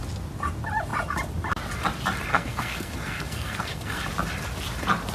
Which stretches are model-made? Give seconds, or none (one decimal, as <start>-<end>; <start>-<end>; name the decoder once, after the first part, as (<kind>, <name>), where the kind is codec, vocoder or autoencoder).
2.3-4.0 (codec, SNAC)